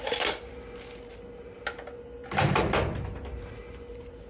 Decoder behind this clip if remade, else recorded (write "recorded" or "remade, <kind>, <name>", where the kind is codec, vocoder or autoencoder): recorded